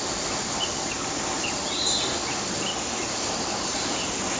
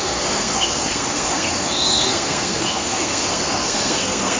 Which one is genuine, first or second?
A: first